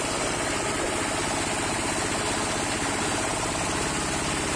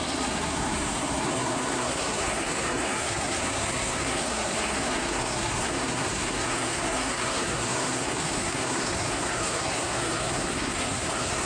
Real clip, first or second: first